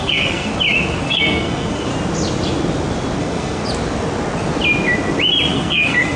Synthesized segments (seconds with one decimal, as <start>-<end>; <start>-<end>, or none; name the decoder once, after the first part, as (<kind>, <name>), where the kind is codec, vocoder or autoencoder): 0.0-0.5 (codec, SNAC); 1.0-1.9; 3.2-3.6; 5.5-6.2